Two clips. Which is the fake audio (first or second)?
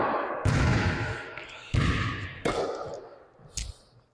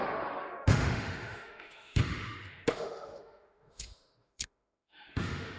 second